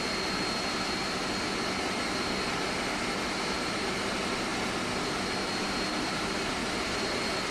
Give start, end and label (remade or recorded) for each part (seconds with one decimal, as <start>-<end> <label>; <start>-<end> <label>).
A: 0.0-7.5 recorded